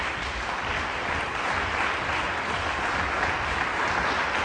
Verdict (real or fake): real